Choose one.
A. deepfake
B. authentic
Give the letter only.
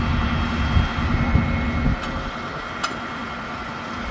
B